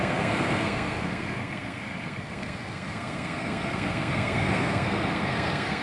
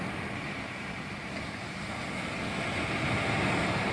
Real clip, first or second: second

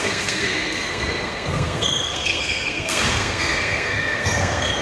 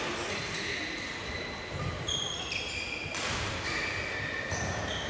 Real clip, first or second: second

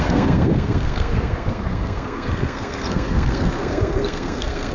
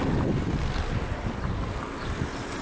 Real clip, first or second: second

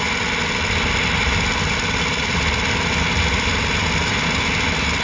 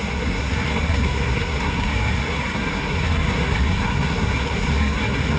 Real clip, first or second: first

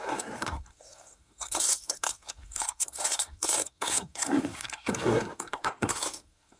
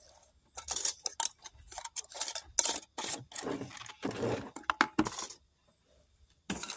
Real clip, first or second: second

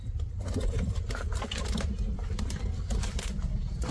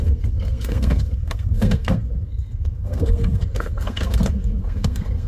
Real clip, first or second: first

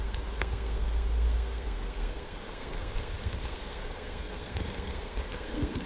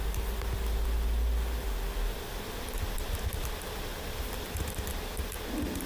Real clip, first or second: second